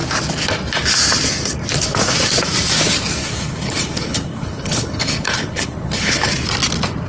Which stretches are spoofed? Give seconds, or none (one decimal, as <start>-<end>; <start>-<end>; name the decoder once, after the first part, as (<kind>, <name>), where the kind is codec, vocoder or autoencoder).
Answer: 3.2-6.3 (codec, HILCodec)